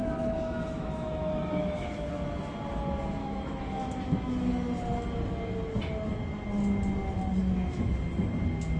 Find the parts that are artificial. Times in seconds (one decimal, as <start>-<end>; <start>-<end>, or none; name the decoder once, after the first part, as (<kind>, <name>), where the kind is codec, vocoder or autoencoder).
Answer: 0.0-2.1 (autoencoder, DAC-VAE); 3.2-4.5; 7.4-7.9